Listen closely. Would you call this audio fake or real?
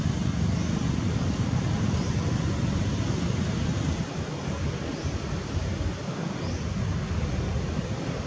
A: real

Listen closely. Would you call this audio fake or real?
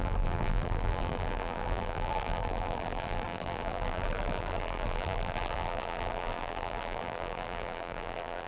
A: fake